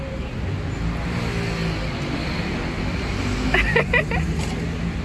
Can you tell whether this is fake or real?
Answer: real